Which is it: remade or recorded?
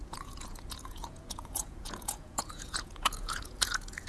remade